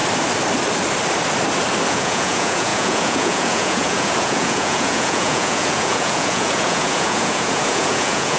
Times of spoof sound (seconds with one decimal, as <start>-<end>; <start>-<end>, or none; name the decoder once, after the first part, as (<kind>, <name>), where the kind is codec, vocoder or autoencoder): 1.9-8.4 (vocoder, Vocos)